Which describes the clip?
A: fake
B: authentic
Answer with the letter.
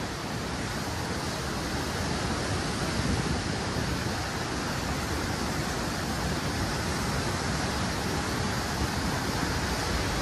B